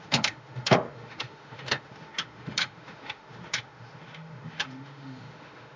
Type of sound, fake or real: fake